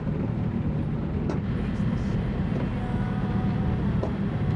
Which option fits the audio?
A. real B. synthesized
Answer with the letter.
A